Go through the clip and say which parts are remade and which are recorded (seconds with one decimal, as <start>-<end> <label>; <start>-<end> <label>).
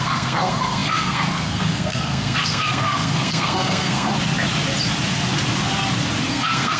0.0-4.1 remade; 4.1-6.3 recorded; 6.3-6.8 remade